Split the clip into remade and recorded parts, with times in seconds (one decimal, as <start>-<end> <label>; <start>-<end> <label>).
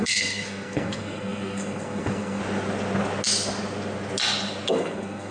0.0-2.4 remade; 2.4-4.7 recorded; 4.7-5.3 remade